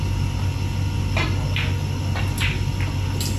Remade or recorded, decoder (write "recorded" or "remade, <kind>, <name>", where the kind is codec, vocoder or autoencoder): recorded